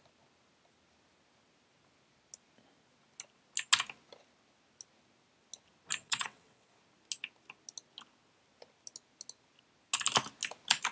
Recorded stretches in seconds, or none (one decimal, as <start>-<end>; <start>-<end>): 0.0-6.0; 6.8-10.9